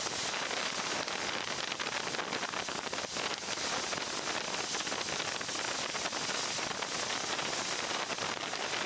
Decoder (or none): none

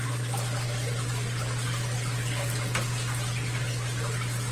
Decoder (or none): none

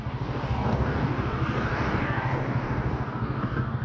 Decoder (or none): codec, DAC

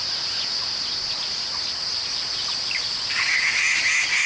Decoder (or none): none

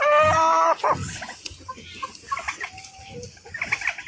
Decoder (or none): none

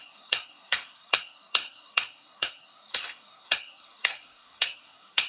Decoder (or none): codec, SNAC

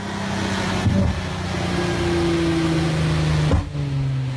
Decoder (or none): none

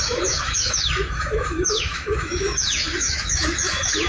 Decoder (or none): autoencoder, DAC-VAE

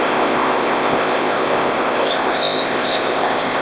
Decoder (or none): codec, ZipCodec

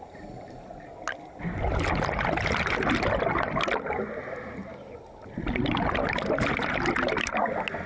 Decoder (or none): none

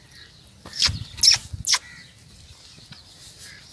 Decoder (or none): none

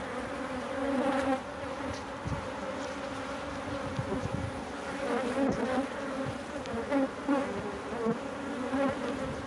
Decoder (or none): none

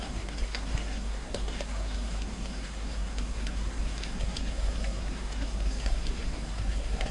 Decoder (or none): codec, SNAC